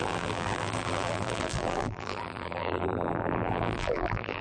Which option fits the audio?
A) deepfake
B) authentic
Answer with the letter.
A